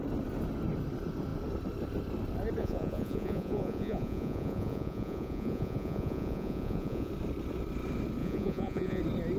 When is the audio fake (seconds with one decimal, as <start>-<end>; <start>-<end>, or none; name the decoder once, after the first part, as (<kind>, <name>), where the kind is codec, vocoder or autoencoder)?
2.6-7.1 (vocoder, Vocos); 8.2-9.0